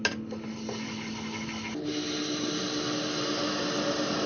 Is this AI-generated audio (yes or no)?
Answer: no